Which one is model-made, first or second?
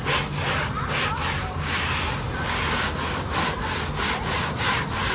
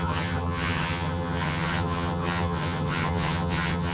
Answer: second